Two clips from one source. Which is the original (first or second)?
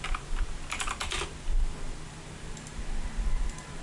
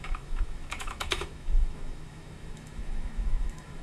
first